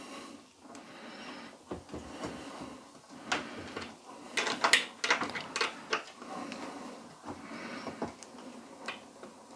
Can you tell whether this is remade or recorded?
recorded